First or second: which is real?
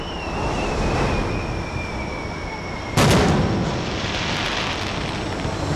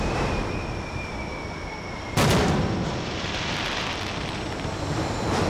first